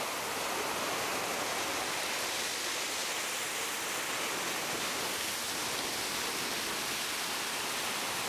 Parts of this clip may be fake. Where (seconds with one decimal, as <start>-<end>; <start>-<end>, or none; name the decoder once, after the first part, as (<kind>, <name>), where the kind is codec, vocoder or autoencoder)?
none

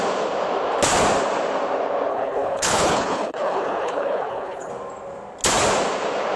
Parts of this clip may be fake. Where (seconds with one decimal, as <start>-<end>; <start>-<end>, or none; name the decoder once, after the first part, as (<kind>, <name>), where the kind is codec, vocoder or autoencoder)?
2.1-4.7 (codec, HILCodec)